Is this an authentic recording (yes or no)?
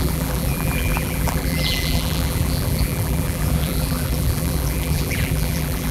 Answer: no